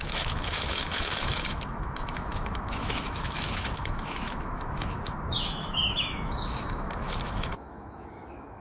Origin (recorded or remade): remade